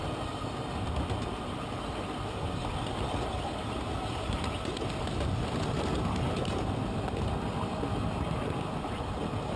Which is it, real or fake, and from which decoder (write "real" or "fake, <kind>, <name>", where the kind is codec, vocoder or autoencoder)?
real